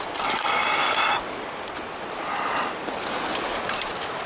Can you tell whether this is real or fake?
real